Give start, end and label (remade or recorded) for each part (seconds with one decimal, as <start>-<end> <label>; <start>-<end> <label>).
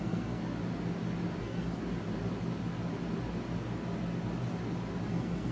0.0-0.4 remade; 0.4-1.4 recorded; 1.4-1.8 remade; 1.8-5.1 recorded; 5.1-5.5 remade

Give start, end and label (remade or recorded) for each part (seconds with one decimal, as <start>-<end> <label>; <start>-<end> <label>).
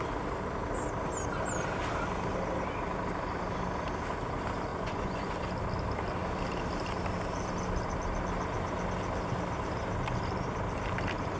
0.0-4.7 recorded; 4.7-5.3 remade; 5.3-11.4 recorded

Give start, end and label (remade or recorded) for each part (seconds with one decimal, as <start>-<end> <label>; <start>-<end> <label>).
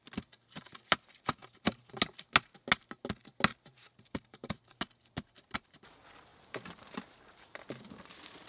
0.0-1.4 recorded; 1.4-1.9 remade; 1.9-3.5 recorded; 3.5-4.6 remade; 4.6-6.3 recorded; 6.3-7.6 remade; 7.6-8.5 recorded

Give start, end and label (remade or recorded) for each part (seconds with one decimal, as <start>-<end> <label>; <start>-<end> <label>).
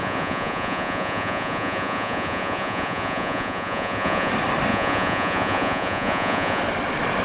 0.0-4.3 remade; 4.3-4.7 recorded; 4.7-6.6 remade; 6.6-7.2 recorded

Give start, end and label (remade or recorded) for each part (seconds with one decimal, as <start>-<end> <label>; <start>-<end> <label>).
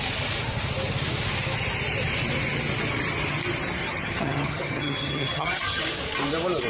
0.0-3.8 recorded; 3.8-5.8 remade; 5.8-6.7 recorded